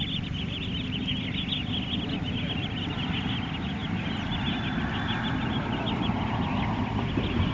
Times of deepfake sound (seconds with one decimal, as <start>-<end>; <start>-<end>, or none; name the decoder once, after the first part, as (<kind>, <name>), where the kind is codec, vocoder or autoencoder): none